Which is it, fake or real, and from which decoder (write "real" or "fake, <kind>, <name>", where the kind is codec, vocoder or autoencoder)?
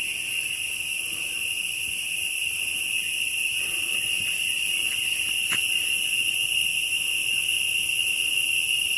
real